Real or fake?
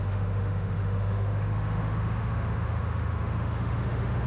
fake